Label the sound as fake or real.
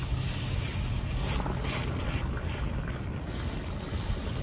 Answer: real